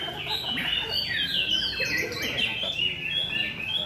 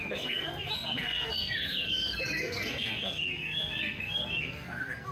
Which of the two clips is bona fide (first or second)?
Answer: first